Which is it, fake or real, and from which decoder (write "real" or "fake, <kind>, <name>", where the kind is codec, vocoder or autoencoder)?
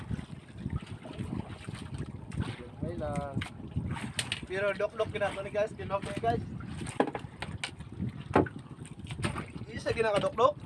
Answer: real